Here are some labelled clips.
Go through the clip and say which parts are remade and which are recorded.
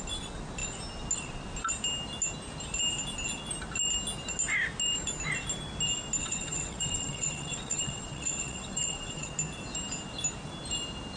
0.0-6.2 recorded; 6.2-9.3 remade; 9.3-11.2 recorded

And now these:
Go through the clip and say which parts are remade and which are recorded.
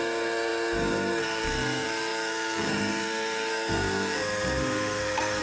0.0-5.4 remade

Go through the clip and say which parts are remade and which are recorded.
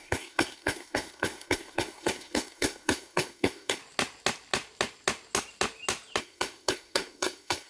0.0-3.8 remade; 3.8-6.2 recorded; 6.2-7.7 remade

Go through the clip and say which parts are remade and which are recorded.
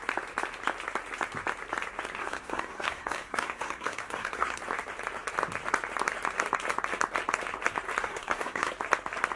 0.0-2.2 recorded; 2.2-4.6 remade; 4.6-8.0 recorded; 8.0-8.7 remade; 8.7-9.4 recorded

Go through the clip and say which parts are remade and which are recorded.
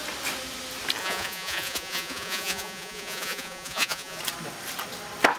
0.0-1.0 recorded; 1.0-4.2 remade; 4.2-5.4 recorded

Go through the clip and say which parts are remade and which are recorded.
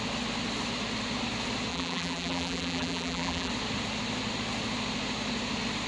0.0-1.7 recorded; 1.7-3.5 remade; 3.5-5.9 recorded